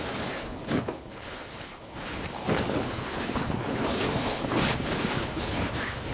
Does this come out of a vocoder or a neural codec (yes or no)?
yes